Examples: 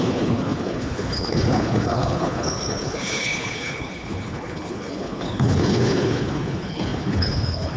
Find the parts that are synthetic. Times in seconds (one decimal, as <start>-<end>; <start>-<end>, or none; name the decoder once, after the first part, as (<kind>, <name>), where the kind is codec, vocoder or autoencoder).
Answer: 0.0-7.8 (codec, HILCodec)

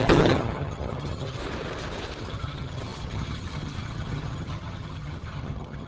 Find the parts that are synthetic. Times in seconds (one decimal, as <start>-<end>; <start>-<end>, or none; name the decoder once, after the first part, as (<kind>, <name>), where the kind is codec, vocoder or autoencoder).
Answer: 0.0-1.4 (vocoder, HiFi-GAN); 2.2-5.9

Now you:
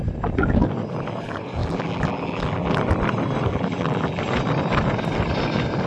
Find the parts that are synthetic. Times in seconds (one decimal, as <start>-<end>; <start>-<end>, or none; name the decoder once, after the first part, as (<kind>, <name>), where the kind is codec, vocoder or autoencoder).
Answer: 1.6-2.8 (vocoder, BigVGAN v2); 3.5-4.2

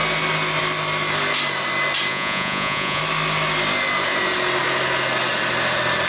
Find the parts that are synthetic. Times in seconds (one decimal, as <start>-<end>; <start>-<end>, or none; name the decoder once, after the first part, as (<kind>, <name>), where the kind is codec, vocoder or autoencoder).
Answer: 2.1-3.0 (vocoder, Vocos)